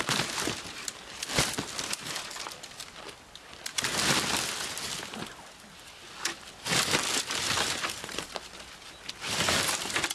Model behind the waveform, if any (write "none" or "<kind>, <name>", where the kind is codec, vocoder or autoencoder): none